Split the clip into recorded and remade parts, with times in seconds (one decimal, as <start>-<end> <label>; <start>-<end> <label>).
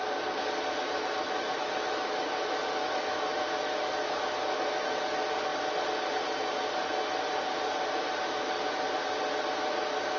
0.0-1.2 recorded; 1.2-5.0 remade; 5.0-10.2 recorded